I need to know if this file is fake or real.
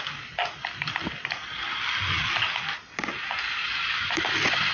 real